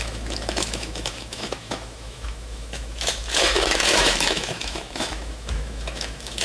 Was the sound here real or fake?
fake